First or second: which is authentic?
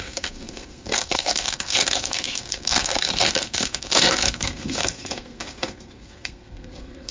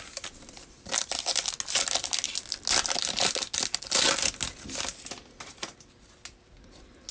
second